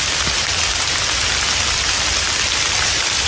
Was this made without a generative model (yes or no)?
yes